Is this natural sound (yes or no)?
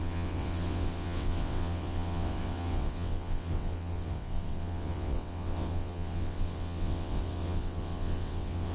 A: no